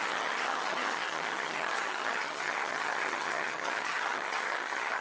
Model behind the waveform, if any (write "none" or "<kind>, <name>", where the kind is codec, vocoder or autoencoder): vocoder, HiFi-GAN